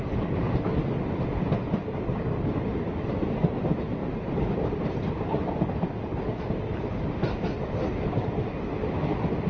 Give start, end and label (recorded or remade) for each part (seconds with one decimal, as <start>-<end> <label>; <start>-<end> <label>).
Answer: 0.0-9.5 recorded